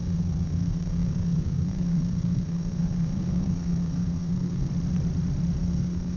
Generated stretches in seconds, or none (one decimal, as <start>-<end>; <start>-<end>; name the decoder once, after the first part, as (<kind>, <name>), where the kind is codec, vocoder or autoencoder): 0.0-4.7 (codec, SNAC); 5.6-6.2

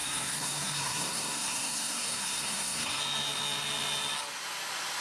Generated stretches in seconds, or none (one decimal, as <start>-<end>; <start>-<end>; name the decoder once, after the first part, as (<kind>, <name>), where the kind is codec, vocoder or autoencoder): 0.0-3.0 (codec, SNAC)

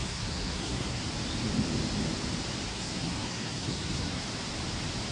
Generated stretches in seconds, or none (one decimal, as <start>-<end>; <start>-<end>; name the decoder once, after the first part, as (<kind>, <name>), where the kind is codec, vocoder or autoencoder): 0.0-1.0 (codec, SNAC); 2.7-4.2

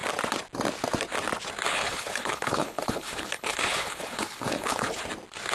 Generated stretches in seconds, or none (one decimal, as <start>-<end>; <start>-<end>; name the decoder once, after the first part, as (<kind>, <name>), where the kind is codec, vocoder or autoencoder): 1.7-5.0 (codec, HILCodec)

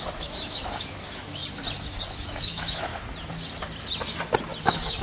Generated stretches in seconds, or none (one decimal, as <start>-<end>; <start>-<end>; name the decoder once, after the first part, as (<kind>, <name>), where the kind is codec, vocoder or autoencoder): 0.0-1.4 (autoencoder, DAC-VAE); 2.1-2.9; 4.6-5.0

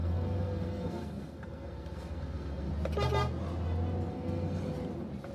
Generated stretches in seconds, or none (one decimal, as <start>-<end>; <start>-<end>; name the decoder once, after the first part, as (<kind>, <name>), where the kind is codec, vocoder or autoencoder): 0.0-2.7 (codec, SNAC); 4.1-4.6

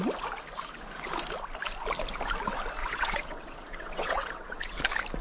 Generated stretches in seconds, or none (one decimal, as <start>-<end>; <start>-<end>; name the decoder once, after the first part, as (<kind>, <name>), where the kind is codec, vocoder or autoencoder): 2.8-4.8 (vocoder, WaveNeXt)